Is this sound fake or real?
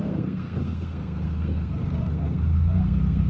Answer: fake